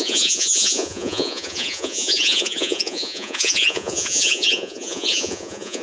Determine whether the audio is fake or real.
fake